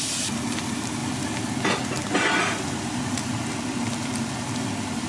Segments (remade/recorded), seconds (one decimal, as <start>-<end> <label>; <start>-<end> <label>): 0.0-5.1 recorded